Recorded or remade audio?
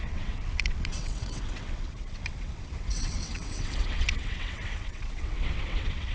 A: remade